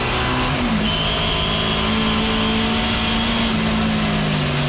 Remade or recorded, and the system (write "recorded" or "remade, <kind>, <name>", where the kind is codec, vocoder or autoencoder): recorded